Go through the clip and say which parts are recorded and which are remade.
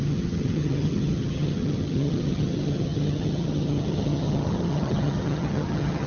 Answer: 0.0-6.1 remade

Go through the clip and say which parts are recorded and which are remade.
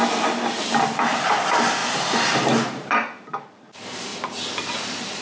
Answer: 0.0-4.1 remade; 4.1-4.8 recorded; 4.8-5.2 remade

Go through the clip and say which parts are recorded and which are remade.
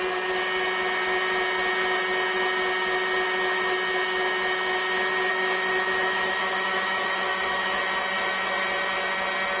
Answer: 0.0-5.3 recorded; 5.3-7.8 remade; 7.8-9.6 recorded